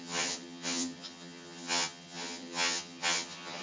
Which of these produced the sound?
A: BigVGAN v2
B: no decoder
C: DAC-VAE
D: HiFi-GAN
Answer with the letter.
D